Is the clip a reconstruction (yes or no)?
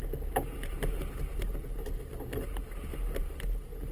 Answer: no